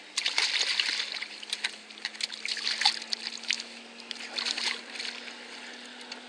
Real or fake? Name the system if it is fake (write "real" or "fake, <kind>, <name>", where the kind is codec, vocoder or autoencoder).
real